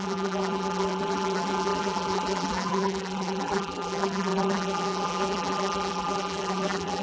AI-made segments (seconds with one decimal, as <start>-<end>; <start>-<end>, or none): 0.0-7.0